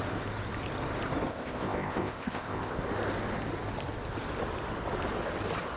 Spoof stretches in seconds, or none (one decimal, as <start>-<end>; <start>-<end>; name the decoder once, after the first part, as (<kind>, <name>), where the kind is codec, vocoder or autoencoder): 1.3-2.8 (codec, ZipCodec)